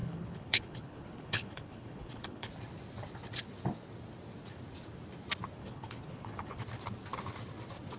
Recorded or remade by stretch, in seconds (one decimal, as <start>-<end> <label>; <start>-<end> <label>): 0.0-2.5 remade; 2.5-5.6 recorded; 5.6-6.6 remade; 6.6-8.0 recorded

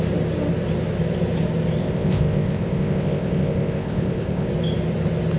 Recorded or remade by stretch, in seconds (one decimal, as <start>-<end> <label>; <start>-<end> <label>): 0.0-1.8 recorded; 1.8-4.5 remade; 4.5-5.4 recorded

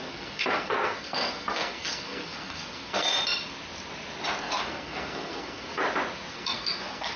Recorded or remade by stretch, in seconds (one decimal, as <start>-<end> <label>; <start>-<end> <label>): 0.0-3.1 remade; 3.1-4.4 recorded; 4.4-5.8 remade; 5.8-6.3 recorded; 6.3-7.2 remade

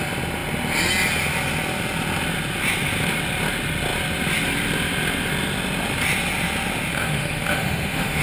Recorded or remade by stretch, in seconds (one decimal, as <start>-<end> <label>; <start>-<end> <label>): 0.0-6.9 recorded; 6.9-8.2 remade

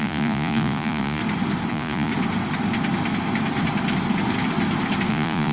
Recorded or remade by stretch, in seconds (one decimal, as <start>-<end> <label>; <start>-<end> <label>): 0.0-1.2 remade; 1.2-1.7 recorded; 1.7-2.1 remade; 2.1-5.1 recorded; 5.1-5.5 remade